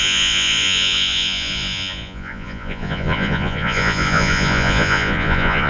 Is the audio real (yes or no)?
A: no